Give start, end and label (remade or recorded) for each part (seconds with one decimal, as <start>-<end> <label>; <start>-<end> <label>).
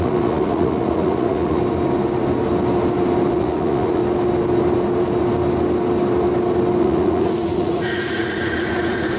0.0-1.6 remade; 1.6-3.3 recorded; 3.3-4.0 remade; 4.0-6.8 recorded; 6.8-9.2 remade